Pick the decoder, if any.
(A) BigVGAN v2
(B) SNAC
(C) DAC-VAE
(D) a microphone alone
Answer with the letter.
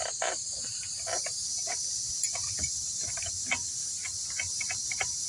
A